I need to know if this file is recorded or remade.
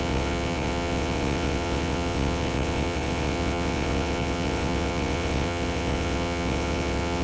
remade